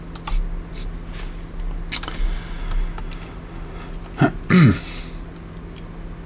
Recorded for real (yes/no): yes